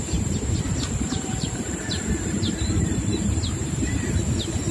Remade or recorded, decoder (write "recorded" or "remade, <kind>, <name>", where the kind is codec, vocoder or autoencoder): remade, vocoder, BigVGAN v2